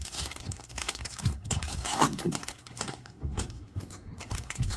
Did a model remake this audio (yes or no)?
yes